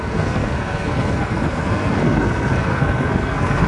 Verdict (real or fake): fake